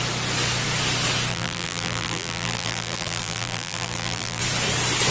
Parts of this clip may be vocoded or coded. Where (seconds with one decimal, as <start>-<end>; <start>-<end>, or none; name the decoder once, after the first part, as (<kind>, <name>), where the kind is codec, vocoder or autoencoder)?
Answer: 1.3-4.4 (vocoder, BigVGAN v2)